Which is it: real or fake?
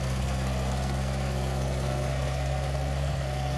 fake